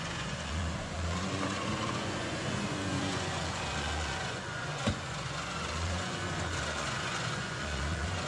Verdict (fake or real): fake